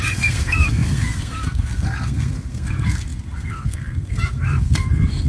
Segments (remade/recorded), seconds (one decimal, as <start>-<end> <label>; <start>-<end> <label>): 0.0-5.3 remade